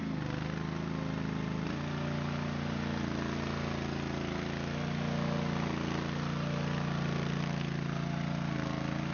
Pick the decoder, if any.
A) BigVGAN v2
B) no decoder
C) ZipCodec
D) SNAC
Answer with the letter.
B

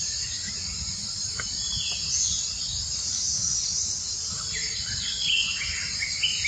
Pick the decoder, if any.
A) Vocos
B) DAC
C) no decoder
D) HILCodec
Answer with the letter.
C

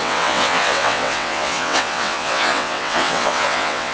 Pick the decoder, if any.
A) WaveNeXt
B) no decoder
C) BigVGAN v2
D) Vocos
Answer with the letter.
A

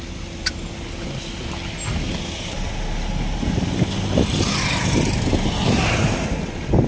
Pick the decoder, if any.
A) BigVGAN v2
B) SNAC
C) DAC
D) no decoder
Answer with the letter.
D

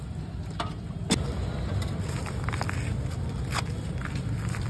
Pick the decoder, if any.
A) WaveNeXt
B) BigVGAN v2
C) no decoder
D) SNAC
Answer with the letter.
C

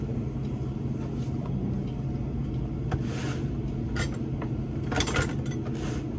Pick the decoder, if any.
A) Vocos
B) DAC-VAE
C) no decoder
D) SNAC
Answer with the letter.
C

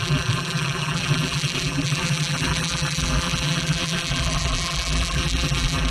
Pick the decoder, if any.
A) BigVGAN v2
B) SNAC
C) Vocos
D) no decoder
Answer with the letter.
A